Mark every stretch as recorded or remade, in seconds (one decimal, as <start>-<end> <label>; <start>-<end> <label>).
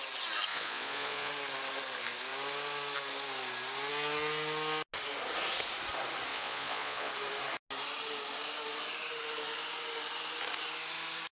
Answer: 0.0-0.5 recorded; 0.5-1.3 remade; 1.3-6.3 recorded; 6.3-7.1 remade; 7.1-11.3 recorded